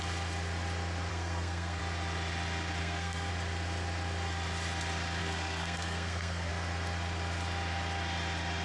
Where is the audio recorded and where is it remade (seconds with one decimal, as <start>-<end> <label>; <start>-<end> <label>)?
0.0-1.1 recorded; 1.1-1.8 remade; 1.8-2.8 recorded; 2.8-3.3 remade; 3.3-5.2 recorded; 5.2-6.5 remade; 6.5-8.6 recorded